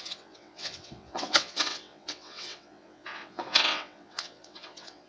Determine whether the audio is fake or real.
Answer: fake